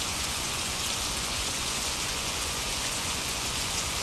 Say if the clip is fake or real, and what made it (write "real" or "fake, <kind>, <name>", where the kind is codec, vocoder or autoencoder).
fake, vocoder, Vocos